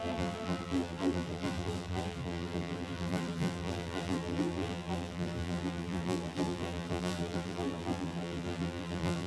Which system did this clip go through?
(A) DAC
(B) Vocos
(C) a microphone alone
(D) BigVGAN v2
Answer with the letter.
D